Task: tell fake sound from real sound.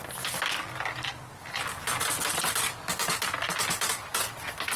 real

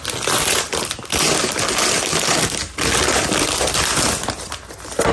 real